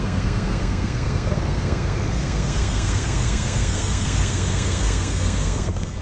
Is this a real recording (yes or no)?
no